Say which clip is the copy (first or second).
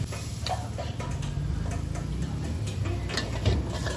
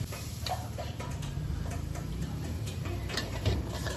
second